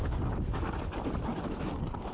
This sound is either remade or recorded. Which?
recorded